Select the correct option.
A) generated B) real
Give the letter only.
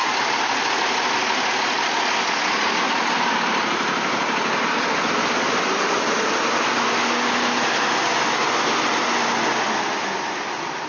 B